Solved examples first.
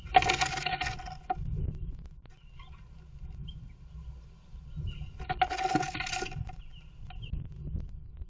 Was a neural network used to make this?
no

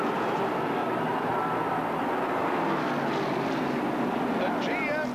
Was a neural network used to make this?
no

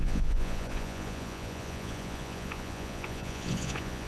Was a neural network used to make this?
yes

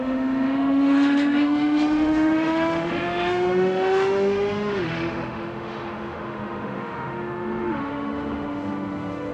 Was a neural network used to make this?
yes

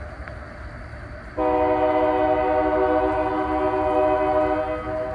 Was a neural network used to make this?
no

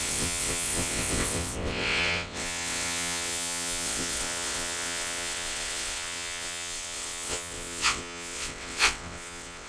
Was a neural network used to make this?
yes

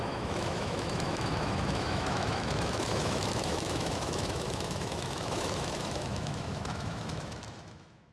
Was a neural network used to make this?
yes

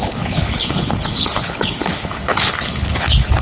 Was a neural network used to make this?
yes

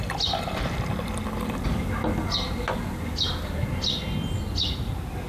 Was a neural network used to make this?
no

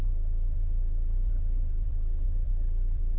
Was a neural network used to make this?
yes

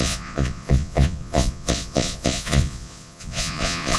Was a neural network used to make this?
yes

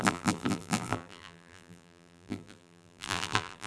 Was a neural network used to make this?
yes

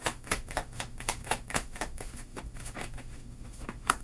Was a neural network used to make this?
yes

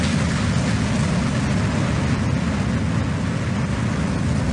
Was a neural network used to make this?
no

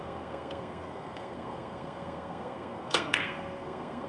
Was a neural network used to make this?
yes